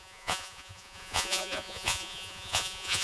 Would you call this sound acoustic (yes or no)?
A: no